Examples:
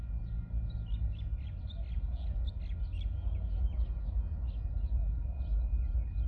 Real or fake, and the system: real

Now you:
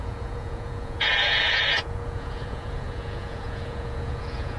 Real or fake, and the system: fake, vocoder, Vocos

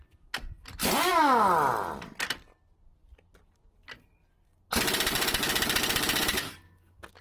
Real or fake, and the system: real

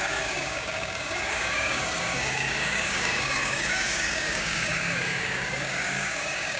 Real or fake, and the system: fake, codec, DAC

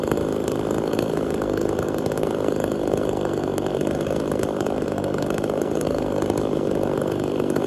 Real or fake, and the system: fake, codec, SNAC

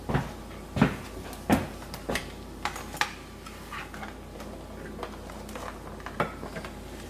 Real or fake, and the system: real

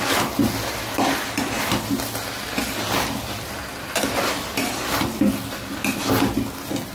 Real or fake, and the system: real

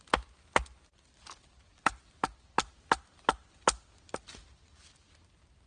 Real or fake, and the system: real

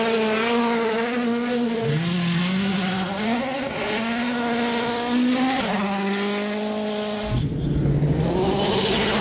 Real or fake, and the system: real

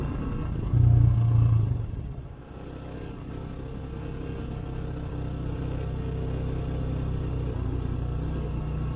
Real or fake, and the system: real